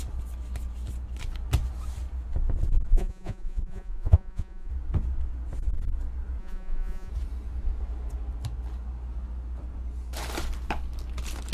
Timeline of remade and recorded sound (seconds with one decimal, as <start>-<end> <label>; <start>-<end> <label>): 0.0-2.9 recorded; 2.9-4.7 remade; 4.7-6.4 recorded; 6.4-7.1 remade; 7.1-11.5 recorded